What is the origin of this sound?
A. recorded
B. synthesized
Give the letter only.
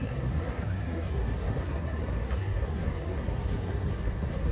B